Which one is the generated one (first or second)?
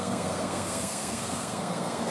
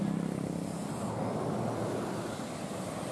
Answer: first